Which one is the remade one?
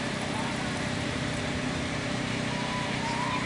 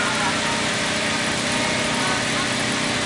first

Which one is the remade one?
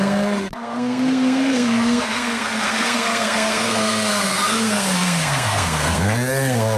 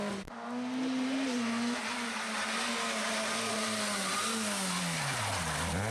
first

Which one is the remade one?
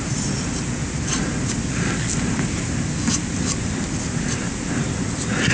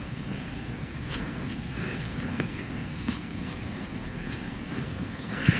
second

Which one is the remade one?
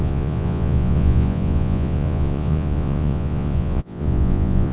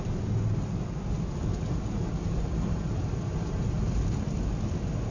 first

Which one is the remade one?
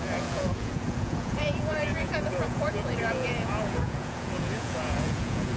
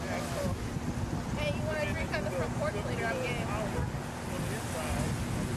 first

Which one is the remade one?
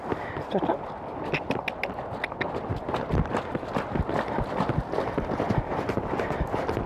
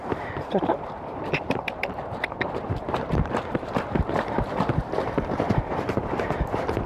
second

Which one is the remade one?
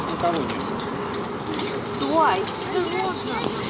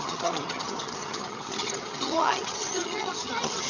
second